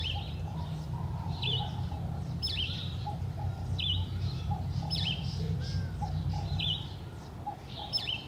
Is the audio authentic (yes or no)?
yes